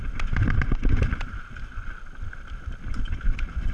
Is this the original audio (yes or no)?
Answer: yes